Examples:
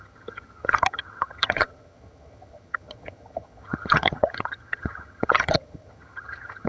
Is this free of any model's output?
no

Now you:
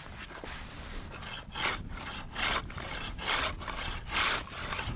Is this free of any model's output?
yes